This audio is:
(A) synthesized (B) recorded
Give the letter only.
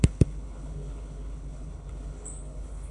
A